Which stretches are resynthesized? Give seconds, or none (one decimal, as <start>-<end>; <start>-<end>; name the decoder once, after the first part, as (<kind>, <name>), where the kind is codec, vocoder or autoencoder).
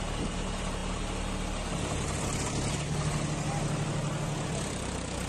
none